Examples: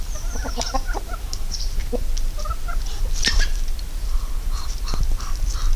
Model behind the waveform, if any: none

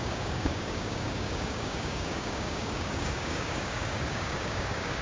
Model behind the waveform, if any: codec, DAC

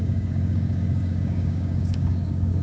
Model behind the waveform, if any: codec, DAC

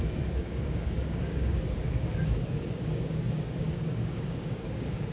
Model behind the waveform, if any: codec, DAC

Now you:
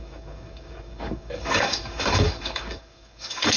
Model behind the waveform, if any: codec, DAC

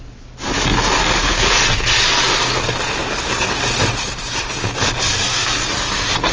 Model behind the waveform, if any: none